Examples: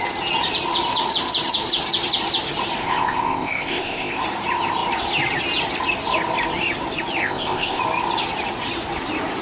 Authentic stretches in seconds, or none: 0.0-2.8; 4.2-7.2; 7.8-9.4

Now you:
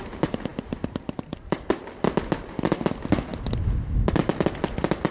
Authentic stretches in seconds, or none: 0.0-5.1

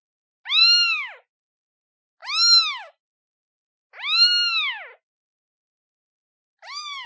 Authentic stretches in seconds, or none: 0.0-7.1

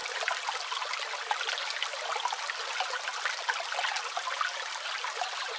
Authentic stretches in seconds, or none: 0.0-5.6